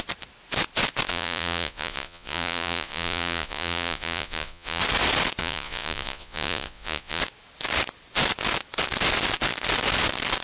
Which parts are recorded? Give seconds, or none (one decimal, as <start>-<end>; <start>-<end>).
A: 0.0-1.1; 4.8-5.4; 7.2-10.4